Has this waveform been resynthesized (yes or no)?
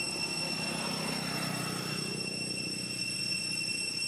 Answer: no